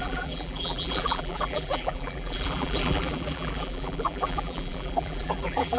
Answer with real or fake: fake